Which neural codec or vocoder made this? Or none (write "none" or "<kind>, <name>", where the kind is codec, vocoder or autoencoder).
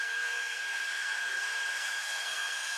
codec, SNAC